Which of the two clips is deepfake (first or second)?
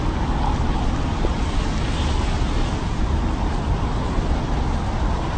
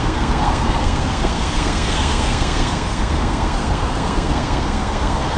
second